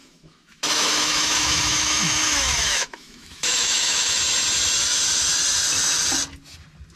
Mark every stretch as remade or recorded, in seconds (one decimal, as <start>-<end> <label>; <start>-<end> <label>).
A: 0.0-4.2 remade; 4.2-7.0 recorded